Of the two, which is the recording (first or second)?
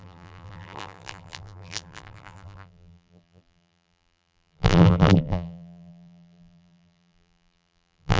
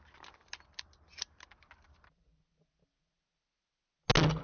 second